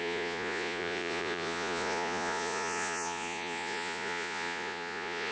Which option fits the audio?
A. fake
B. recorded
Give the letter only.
A